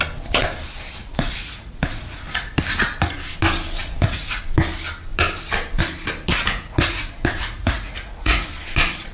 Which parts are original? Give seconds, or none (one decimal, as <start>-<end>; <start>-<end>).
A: 0.0-1.0; 2.5-3.8; 4.4-6.3; 8.5-9.1